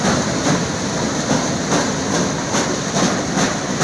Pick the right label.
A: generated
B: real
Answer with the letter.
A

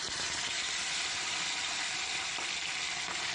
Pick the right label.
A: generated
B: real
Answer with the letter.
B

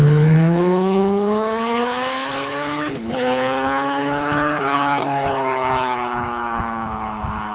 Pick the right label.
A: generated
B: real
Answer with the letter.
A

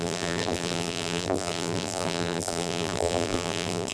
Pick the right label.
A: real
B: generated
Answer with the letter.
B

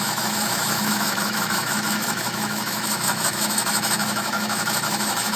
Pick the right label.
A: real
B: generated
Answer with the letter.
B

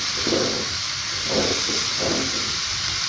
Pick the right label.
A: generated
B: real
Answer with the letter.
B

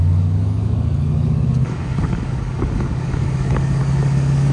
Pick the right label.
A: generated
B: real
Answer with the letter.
A